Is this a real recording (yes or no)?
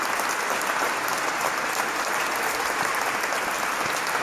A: yes